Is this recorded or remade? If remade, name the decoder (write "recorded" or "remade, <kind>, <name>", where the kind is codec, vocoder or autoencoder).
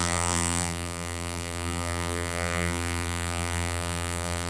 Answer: remade, vocoder, BigVGAN v2